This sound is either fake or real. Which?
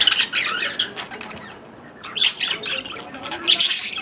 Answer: real